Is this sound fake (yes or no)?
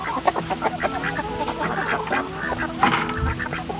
no